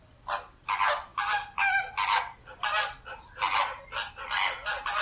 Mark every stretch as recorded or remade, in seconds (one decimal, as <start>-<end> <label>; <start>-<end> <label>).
0.0-5.0 recorded